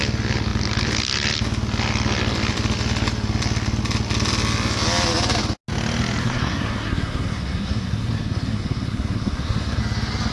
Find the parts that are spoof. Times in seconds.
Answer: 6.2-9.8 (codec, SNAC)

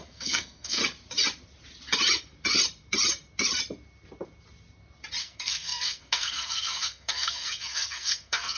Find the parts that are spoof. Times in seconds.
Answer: 0.0-0.8 (codec, SNAC); 5.2-8.6

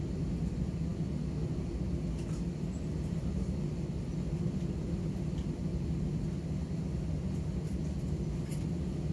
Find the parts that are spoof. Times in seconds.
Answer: none